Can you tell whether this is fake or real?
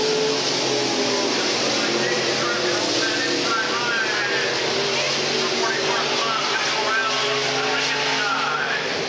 real